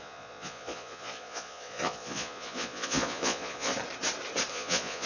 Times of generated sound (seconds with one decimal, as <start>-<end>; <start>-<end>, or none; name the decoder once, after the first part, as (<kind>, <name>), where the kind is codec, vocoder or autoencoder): 0.0-3.7 (vocoder, Vocos); 4.5-5.1